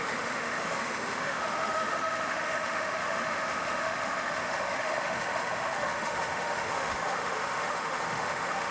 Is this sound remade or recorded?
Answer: remade